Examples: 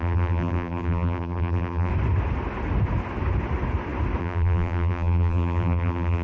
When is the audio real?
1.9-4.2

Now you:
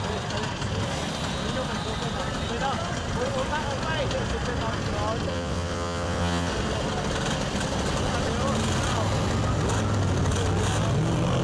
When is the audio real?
0.0-5.3; 6.5-11.4

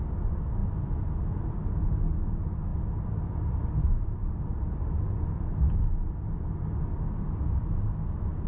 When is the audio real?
0.0-8.5

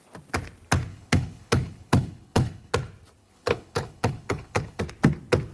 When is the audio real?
0.0-0.9; 2.7-3.2; 4.8-5.5

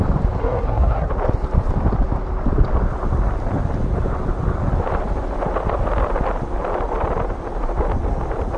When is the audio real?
0.0-0.4; 1.1-8.6

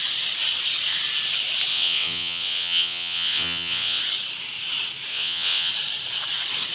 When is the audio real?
0.0-1.7; 4.0-5.1; 5.7-6.7

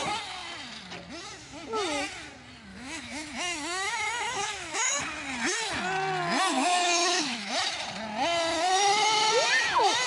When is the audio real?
0.0-2.7; 5.0-6.5; 7.5-10.1